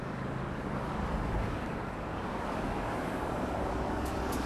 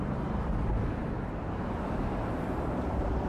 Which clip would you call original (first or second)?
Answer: second